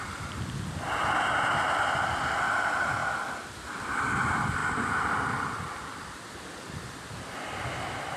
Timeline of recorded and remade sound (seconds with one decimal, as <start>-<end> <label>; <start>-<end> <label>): 0.0-8.2 recorded